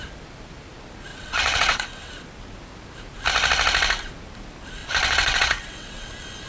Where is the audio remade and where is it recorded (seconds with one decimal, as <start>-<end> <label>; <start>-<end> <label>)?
0.0-1.1 recorded; 1.1-2.1 remade; 2.1-4.8 recorded; 4.8-6.1 remade; 6.1-6.5 recorded

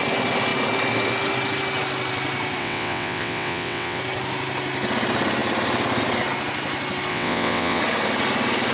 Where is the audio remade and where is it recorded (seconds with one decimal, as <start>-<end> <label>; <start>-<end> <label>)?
0.0-2.6 recorded; 2.6-4.0 remade; 4.0-7.1 recorded; 7.1-7.8 remade; 7.8-8.7 recorded

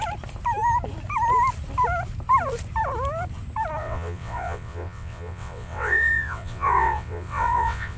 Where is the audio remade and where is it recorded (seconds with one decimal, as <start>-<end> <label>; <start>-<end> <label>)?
0.0-3.8 recorded; 3.8-8.0 remade

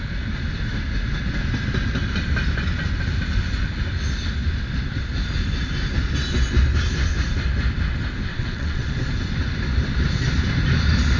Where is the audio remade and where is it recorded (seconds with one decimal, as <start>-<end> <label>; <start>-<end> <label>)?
0.0-8.3 recorded; 8.3-8.9 remade; 8.9-11.2 recorded

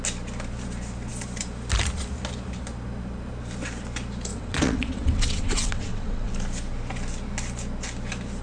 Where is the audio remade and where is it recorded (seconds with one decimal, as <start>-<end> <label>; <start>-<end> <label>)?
0.0-4.3 recorded; 4.3-6.3 remade; 6.3-8.4 recorded

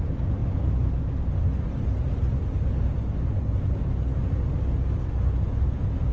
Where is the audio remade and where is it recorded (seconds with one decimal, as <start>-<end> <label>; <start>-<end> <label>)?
0.0-6.1 recorded

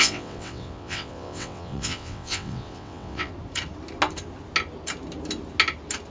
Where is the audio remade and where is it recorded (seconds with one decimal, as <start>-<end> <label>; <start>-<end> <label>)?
0.0-3.3 remade; 3.3-6.1 recorded

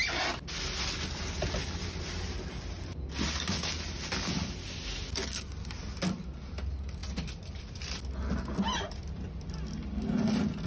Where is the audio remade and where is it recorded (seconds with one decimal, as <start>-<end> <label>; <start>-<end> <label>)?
0.0-10.7 recorded